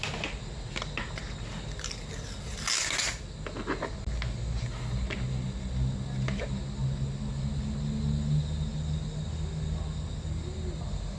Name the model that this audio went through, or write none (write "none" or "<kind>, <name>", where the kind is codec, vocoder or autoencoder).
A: none